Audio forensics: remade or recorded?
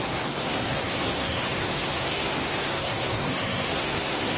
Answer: remade